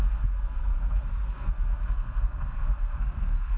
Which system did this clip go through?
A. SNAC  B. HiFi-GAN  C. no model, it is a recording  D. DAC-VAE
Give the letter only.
A